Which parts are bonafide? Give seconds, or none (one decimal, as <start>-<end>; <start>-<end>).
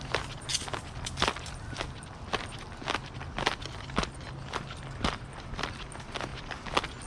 0.5-4.5